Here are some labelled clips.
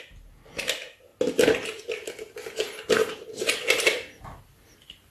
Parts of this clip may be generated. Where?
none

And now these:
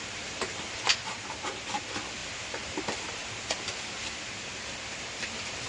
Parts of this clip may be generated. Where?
0.0-0.5 (vocoder, BigVGAN v2); 1.8-5.7

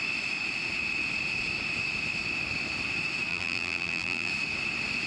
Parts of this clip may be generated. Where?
3.3-4.3 (vocoder, BigVGAN v2)